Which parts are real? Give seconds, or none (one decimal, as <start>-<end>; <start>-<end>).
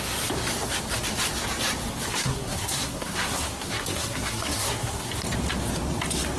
0.0-2.1; 5.1-6.4